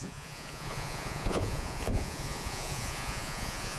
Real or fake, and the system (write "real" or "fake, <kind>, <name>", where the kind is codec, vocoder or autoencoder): fake, vocoder, Vocos